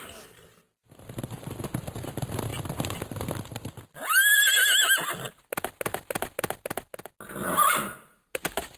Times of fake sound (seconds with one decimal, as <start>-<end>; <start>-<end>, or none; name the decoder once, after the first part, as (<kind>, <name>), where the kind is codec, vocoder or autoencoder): none